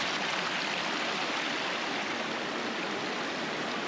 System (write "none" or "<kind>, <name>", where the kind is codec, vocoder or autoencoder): none